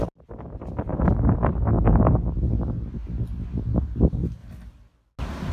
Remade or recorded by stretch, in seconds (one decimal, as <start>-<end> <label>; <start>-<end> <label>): 0.0-5.5 recorded